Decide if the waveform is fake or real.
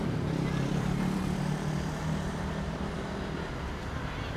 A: fake